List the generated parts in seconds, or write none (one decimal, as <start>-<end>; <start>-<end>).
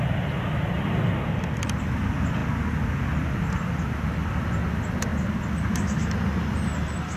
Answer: none